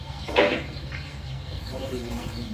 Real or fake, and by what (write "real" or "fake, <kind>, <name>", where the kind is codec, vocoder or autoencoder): fake, codec, SNAC